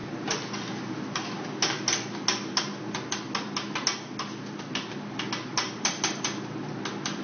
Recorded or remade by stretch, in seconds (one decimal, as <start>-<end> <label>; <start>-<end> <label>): 0.0-7.2 recorded